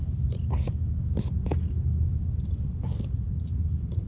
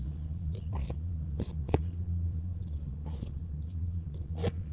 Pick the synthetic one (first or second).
second